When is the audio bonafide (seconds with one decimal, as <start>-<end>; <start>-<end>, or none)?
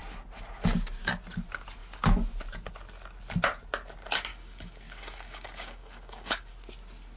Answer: 0.0-4.3; 6.5-7.2